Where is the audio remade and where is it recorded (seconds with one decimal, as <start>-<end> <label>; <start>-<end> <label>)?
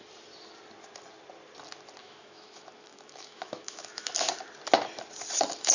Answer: 0.0-2.0 recorded; 2.0-4.1 remade; 4.1-5.7 recorded